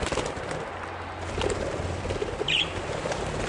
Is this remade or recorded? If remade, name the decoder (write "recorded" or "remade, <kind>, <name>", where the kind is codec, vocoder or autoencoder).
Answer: recorded